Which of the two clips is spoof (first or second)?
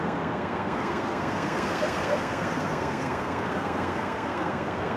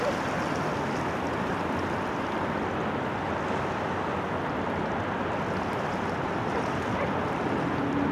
first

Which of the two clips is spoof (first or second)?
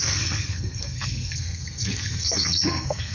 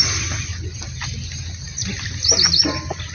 first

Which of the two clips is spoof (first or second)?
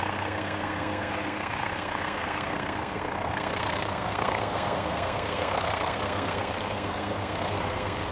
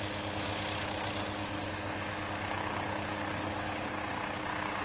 first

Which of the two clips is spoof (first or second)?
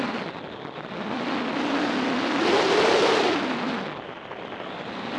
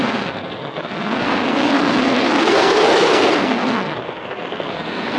second